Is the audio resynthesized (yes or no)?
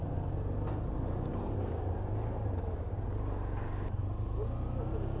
no